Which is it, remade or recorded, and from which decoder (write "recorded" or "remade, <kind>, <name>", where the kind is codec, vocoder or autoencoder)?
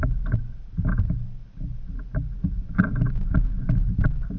recorded